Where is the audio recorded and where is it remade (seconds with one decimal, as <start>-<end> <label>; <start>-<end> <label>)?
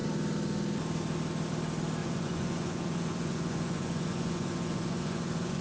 0.0-2.0 recorded; 2.0-5.6 remade